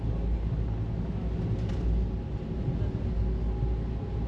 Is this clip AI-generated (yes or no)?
no